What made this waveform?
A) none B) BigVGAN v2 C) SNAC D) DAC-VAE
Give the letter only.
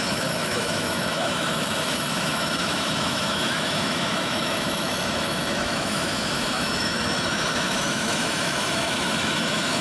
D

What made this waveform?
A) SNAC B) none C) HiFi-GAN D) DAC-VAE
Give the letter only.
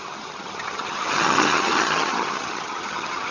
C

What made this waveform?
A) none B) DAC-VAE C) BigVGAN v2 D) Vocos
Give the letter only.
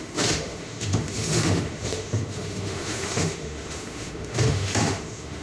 B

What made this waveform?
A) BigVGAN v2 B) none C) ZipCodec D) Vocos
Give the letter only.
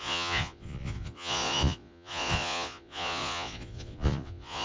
D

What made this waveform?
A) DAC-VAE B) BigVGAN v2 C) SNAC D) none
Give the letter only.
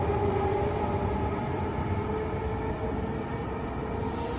D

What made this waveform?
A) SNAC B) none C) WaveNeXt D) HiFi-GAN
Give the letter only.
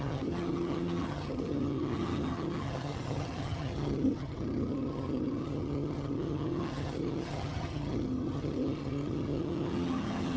D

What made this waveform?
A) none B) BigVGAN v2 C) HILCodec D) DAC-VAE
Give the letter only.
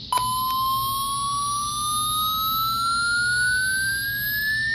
A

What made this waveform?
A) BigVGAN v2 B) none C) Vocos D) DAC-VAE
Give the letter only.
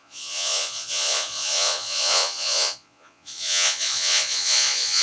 C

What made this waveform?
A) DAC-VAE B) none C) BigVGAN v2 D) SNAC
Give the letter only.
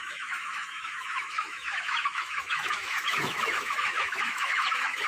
A